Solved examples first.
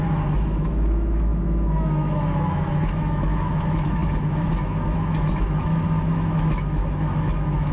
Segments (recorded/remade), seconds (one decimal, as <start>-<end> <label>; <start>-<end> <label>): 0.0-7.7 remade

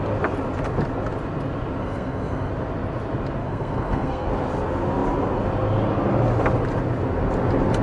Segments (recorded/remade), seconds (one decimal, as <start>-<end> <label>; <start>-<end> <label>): 0.0-1.8 recorded; 1.8-2.5 remade; 2.5-3.4 recorded; 3.4-4.3 remade; 4.3-7.8 recorded

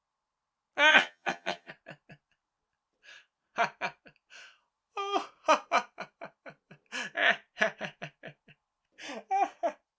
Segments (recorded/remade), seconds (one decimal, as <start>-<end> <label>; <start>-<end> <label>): 0.0-0.9 recorded; 0.9-1.7 remade; 1.7-10.0 recorded

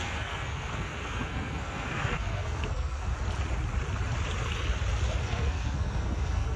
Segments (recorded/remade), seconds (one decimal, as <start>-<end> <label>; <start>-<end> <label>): 0.0-3.1 remade; 3.1-5.2 recorded; 5.2-6.6 remade